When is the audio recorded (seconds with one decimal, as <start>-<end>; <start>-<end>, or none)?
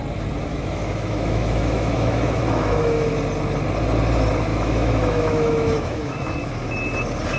0.0-0.5; 3.1-4.5; 6.7-7.4